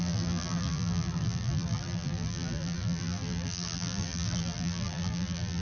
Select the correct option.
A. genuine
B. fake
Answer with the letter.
B